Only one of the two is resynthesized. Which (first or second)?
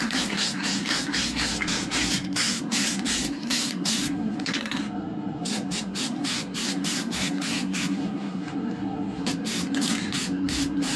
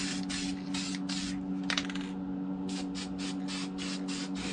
first